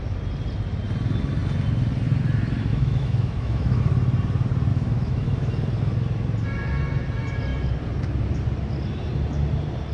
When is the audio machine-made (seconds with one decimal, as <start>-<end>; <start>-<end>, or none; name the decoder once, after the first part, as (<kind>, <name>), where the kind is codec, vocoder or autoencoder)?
2.7-3.8 (autoencoder, DAC-VAE); 4.7-5.5